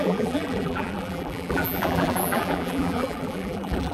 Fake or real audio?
fake